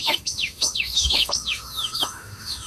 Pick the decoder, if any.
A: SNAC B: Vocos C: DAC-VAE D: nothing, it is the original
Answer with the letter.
C